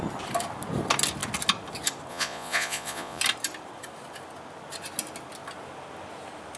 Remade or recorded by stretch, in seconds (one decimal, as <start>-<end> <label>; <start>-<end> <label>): 0.0-2.1 recorded; 2.1-3.2 remade; 3.2-6.6 recorded